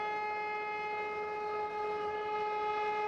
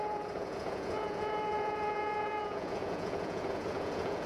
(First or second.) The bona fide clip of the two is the first